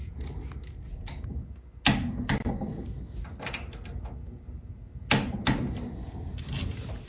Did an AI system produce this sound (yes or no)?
no